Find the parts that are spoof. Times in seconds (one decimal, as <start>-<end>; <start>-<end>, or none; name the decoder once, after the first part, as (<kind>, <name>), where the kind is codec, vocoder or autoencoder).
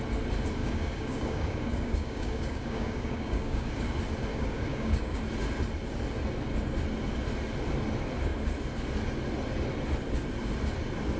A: 0.6-3.8 (codec, DAC); 4.3-5.2